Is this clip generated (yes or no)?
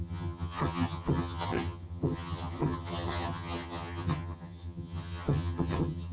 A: yes